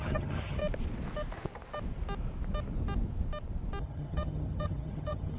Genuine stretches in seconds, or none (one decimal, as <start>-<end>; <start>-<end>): 0.6-3.8